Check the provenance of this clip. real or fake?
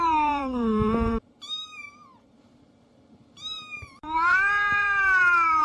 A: fake